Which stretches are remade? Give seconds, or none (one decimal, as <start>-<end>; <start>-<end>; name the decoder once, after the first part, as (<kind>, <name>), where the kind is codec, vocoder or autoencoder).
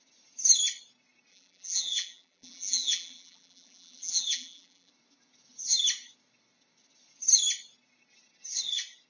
1.3-4.9 (vocoder, BigVGAN v2)